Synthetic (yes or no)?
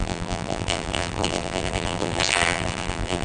yes